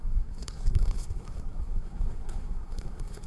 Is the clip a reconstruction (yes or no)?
yes